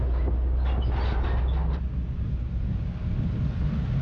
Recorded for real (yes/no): yes